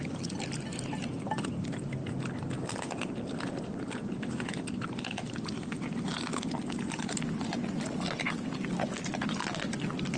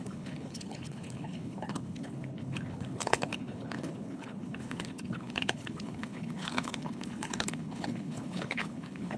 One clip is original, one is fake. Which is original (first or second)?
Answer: first